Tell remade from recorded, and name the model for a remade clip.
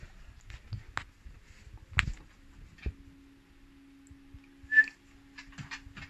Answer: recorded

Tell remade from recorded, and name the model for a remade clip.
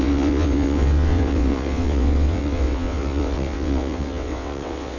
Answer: remade, vocoder, WaveNeXt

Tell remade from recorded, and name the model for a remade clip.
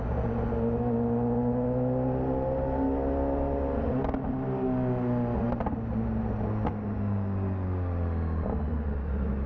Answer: recorded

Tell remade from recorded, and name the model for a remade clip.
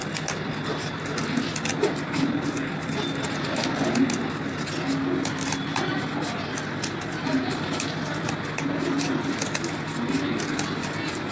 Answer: recorded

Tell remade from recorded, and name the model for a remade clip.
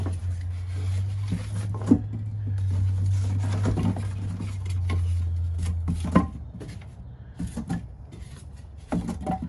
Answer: recorded